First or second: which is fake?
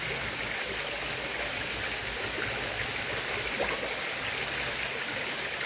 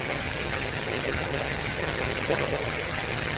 second